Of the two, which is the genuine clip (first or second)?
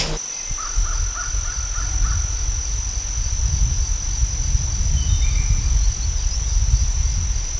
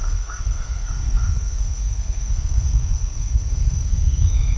first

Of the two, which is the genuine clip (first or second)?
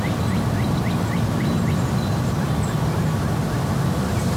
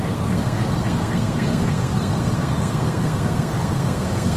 first